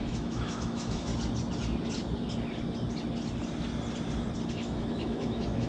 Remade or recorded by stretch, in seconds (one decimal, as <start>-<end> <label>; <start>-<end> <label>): 0.0-1.1 remade; 1.1-4.5 recorded; 4.5-5.7 remade